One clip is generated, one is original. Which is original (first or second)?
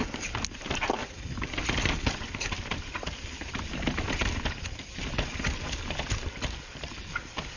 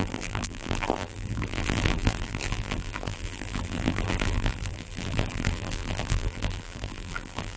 first